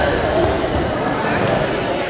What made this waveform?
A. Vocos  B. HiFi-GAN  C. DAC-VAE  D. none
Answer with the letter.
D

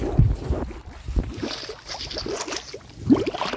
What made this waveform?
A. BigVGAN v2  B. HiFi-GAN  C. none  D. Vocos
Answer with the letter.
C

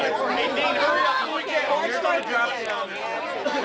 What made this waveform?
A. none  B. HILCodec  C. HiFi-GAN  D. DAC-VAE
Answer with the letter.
A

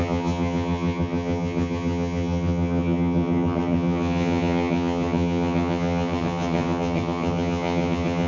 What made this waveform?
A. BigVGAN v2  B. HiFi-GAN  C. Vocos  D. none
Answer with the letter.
B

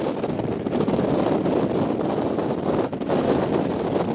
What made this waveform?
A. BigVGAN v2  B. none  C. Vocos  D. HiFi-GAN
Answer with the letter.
B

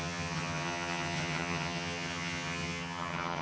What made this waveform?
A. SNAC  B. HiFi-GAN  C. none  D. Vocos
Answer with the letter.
B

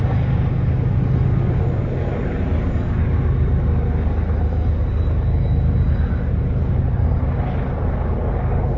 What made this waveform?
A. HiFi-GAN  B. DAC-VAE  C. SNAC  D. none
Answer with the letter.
D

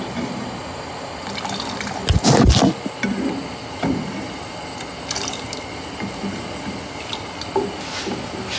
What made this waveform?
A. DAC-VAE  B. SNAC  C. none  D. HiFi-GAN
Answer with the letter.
C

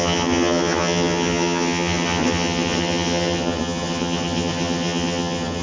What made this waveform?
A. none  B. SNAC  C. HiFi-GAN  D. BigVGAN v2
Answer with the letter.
C